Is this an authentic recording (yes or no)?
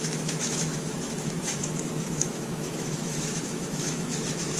no